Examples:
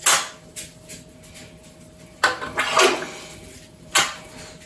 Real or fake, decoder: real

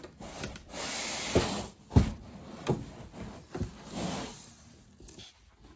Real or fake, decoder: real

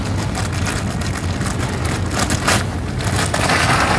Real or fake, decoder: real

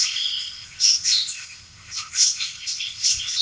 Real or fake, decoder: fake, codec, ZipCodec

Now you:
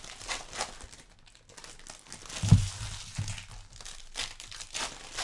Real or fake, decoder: real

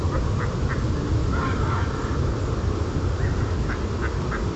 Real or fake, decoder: real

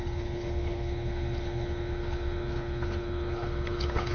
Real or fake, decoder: fake, codec, HILCodec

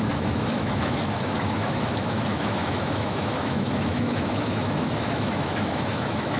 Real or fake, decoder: fake, autoencoder, DAC-VAE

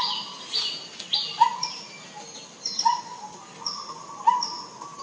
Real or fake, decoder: real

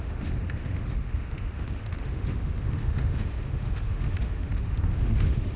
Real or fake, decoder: fake, autoencoder, DAC-VAE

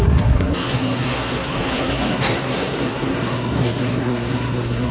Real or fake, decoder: fake, codec, SNAC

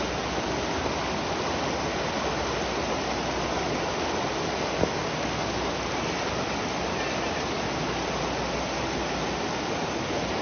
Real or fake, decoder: real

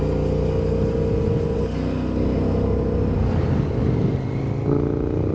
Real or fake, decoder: real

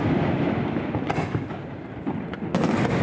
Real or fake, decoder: real